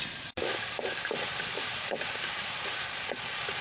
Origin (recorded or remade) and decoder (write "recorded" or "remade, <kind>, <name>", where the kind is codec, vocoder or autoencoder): recorded